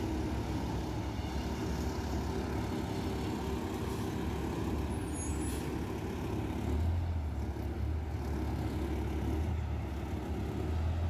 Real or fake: real